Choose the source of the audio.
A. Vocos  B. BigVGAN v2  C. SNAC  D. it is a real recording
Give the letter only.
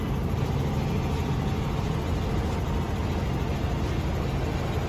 D